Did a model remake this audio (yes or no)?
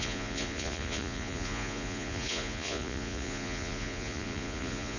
yes